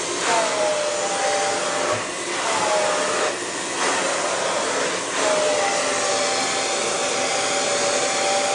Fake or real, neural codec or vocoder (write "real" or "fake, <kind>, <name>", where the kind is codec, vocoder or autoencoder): real